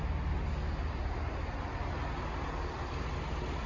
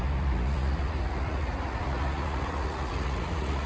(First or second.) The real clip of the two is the first